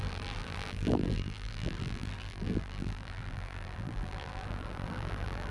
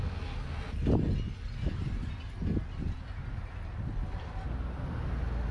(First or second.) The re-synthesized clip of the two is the first